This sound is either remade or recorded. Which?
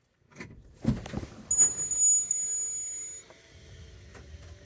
recorded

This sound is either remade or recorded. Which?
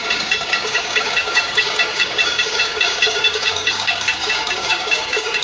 remade